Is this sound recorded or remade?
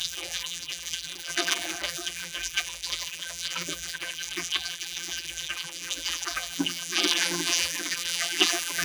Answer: remade